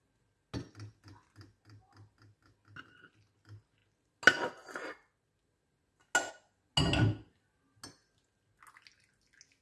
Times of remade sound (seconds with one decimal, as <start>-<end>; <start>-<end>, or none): none